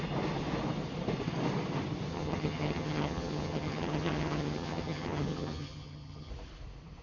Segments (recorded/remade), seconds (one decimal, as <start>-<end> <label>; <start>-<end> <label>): 0.0-2.1 recorded; 2.1-6.3 remade; 6.3-7.0 recorded